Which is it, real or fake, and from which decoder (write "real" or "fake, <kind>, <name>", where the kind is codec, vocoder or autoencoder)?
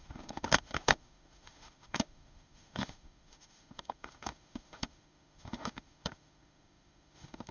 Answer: fake, autoencoder, DAC-VAE